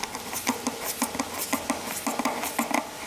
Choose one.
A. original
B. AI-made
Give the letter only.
A